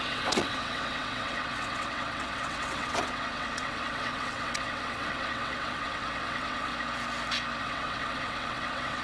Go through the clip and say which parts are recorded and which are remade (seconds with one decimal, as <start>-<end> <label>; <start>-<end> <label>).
0.0-6.7 remade; 6.7-7.6 recorded; 7.6-9.0 remade